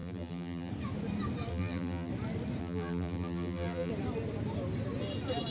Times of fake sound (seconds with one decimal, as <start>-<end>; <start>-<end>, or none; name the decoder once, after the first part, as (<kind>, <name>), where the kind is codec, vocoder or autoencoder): 0.0-0.7 (vocoder, BigVGAN v2); 1.5-2.1; 2.6-3.9